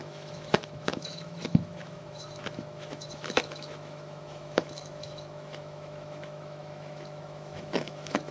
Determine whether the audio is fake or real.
fake